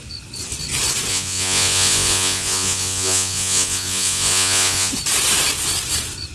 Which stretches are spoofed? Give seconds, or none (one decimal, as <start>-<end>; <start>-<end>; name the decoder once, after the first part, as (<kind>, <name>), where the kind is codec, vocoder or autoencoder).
1.1-4.9 (vocoder, Vocos)